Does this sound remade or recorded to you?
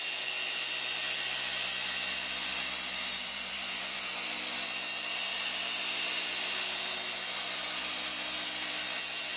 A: remade